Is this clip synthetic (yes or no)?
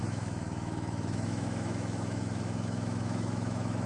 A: yes